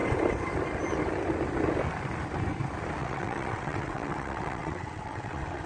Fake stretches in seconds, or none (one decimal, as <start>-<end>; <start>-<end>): 3.0-5.7